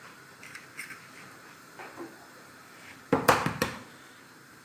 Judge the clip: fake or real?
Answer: fake